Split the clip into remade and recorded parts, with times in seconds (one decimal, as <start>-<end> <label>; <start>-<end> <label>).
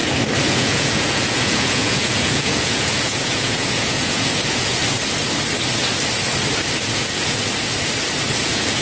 0.0-0.5 recorded; 0.5-4.8 remade; 4.8-6.8 recorded; 6.8-7.4 remade; 7.4-8.4 recorded; 8.4-8.8 remade